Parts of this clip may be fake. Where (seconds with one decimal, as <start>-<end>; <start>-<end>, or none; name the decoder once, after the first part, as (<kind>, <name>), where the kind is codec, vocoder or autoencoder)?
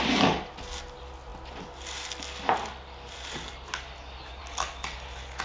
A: none